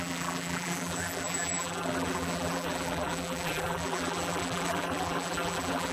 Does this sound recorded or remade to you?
remade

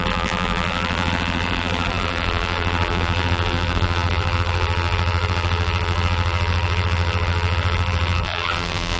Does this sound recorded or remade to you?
remade